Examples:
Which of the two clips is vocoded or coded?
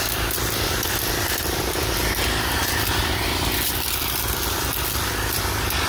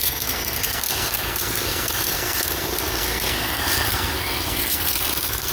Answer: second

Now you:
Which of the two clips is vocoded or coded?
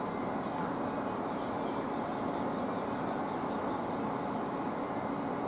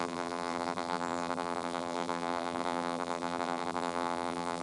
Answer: second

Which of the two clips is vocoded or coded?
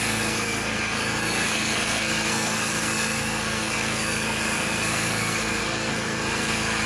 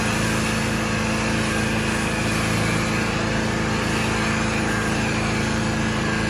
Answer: first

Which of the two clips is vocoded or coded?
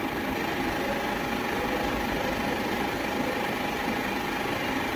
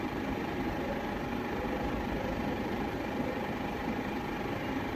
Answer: second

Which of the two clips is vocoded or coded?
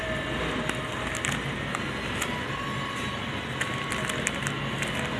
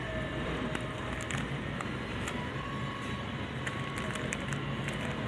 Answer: second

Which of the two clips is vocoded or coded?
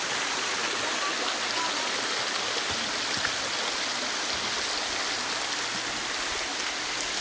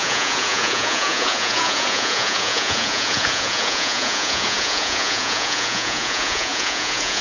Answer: second